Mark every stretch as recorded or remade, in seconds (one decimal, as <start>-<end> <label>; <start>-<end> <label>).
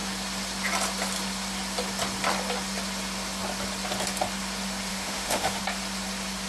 0.0-4.9 recorded; 4.9-5.6 remade; 5.6-6.5 recorded